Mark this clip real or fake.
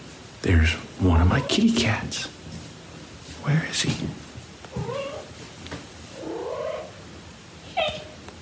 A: real